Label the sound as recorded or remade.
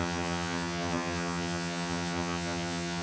remade